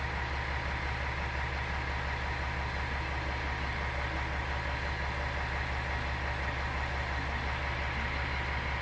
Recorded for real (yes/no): yes